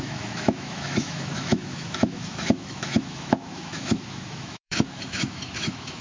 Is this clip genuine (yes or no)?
no